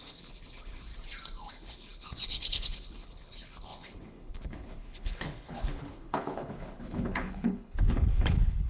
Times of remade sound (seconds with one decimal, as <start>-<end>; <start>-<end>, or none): 0.0-0.9; 1.5-8.7